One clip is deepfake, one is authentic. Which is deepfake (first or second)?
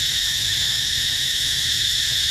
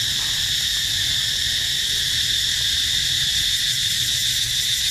first